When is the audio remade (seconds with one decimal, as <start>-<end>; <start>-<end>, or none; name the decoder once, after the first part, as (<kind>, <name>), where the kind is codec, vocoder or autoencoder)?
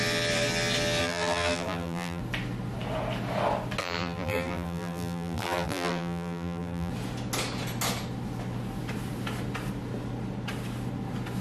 1.0-2.2 (vocoder, BigVGAN v2); 3.8-6.9